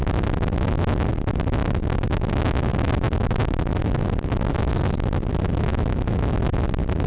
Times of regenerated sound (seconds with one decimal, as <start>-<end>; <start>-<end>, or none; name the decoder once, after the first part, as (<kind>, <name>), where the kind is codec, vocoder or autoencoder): 1.6-2.3 (vocoder, BigVGAN v2); 2.7-4.7